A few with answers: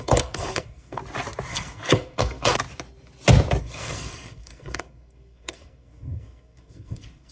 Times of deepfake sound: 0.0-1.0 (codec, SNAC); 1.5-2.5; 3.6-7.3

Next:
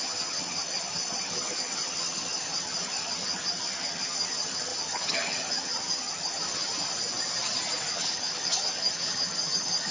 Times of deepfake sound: 0.0-6.6 (vocoder, HiFi-GAN); 7.9-9.9